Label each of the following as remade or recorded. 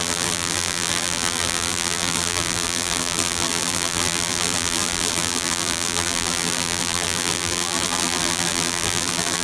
remade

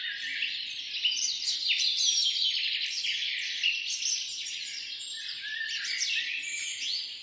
remade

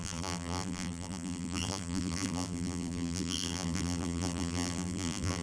remade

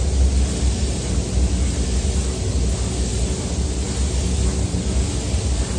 recorded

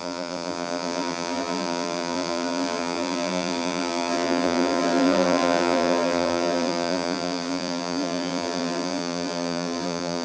remade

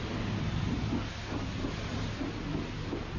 recorded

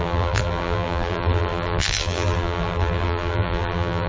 remade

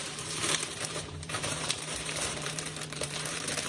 remade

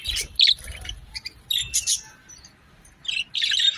recorded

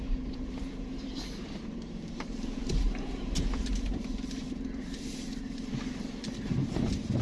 remade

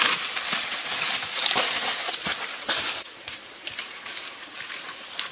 remade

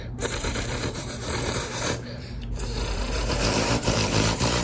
remade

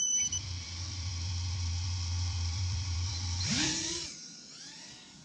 remade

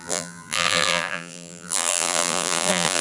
remade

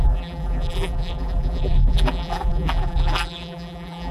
remade